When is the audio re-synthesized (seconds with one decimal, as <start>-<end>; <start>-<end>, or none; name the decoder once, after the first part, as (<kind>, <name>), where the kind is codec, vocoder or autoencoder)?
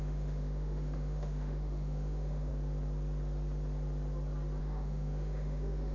0.0-2.5 (autoencoder, DAC-VAE); 4.6-5.9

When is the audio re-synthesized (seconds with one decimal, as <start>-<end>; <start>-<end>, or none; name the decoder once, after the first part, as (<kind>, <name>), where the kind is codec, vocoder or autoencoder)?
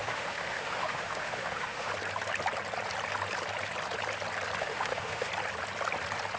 0.0-1.9 (autoencoder, DAC-VAE); 4.6-5.3